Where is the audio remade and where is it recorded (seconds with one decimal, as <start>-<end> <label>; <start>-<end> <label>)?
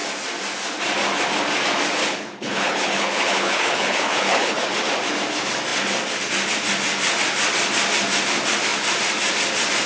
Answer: 0.0-2.0 recorded; 2.0-4.7 remade; 4.7-9.9 recorded